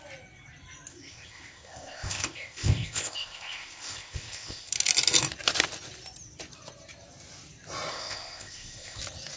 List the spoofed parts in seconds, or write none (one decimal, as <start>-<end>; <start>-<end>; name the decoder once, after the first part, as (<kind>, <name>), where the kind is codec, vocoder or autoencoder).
0.9-4.7 (codec, ZipCodec); 7.9-9.0

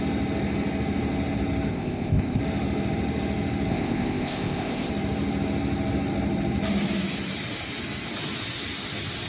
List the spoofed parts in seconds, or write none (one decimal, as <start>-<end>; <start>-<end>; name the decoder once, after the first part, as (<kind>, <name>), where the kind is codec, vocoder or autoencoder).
1.7-2.4 (codec, ZipCodec); 3.7-4.9

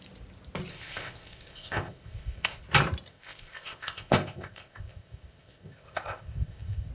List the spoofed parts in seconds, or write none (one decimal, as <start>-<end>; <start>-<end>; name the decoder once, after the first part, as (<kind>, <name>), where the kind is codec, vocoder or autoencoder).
0.7-2.6 (codec, ZipCodec); 3.1-6.9

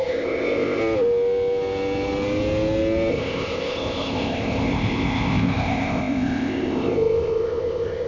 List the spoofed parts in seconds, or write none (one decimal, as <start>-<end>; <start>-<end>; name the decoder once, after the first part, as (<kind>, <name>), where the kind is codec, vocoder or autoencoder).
0.0-0.8 (codec, ZipCodec); 3.1-8.1

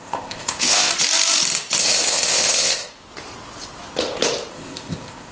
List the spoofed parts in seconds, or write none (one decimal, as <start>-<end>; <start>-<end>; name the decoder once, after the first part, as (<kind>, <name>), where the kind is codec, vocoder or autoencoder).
0.0-0.9 (codec, ZipCodec); 1.8-2.9; 4.5-5.3

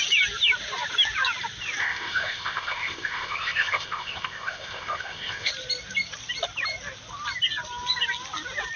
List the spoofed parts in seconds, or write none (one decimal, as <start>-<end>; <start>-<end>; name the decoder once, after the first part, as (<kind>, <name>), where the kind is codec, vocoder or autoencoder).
1.8-5.5 (codec, ZipCodec)

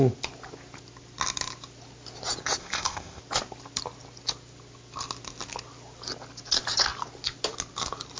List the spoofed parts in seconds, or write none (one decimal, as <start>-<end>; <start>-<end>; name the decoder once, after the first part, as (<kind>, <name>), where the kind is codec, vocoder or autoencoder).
2.6-3.2 (codec, ZipCodec)